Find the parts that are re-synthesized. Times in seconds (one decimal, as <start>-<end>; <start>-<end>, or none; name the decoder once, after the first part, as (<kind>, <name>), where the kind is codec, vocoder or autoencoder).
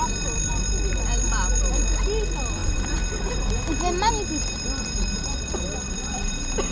none